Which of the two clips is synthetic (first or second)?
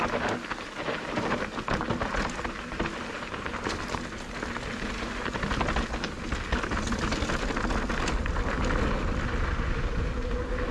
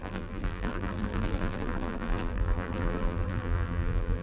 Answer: second